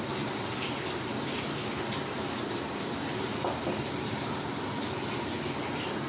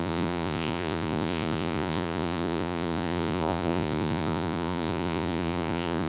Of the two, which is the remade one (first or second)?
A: second